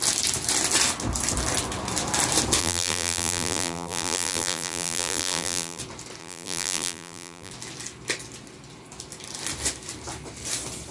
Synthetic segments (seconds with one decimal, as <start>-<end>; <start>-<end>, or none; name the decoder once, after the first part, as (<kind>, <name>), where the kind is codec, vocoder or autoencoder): 2.6-5.8 (vocoder, BigVGAN v2); 6.2-7.5